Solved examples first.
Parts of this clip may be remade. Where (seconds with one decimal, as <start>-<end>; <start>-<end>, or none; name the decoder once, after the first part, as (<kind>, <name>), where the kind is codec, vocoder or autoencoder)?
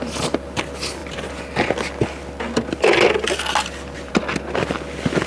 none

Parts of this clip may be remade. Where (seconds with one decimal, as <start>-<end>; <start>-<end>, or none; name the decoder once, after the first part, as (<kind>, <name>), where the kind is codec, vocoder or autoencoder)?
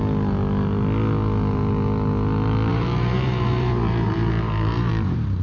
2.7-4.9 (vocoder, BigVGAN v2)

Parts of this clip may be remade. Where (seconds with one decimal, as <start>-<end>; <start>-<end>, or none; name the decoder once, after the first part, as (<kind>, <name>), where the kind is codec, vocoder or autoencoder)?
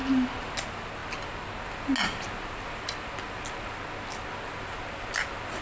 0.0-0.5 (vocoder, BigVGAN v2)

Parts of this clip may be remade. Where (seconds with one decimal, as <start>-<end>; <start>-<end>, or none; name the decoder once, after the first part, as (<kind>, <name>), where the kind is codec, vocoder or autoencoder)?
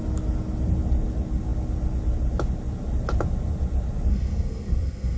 4.1-5.2 (codec, SNAC)